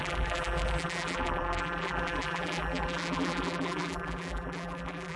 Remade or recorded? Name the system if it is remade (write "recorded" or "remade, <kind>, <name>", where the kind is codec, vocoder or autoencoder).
remade, vocoder, BigVGAN v2